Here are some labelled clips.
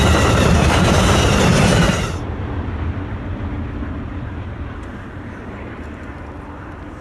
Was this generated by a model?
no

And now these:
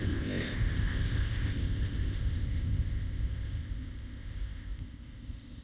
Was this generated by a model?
yes